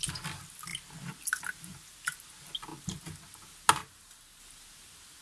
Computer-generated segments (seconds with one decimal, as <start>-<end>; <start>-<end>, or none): 3.8-4.4